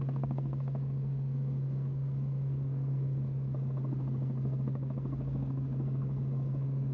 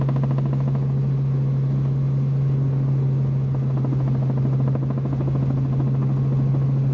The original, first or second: second